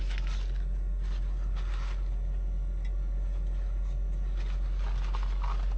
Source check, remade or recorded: recorded